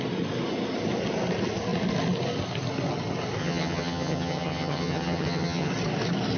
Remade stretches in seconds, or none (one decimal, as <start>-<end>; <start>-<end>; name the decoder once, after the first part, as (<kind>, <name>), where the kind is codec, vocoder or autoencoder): 3.4-5.7 (vocoder, HiFi-GAN)